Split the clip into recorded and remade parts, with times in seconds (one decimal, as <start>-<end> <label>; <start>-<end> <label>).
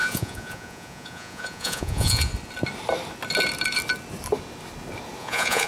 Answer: 0.0-2.3 remade; 2.3-5.2 recorded; 5.2-5.7 remade